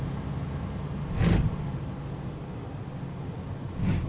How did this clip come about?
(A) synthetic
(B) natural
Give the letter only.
B